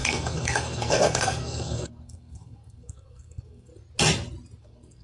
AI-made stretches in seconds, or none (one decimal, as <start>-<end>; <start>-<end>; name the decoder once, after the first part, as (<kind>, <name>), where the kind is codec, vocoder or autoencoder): 0.0-3.7 (codec, SNAC); 4.6-5.0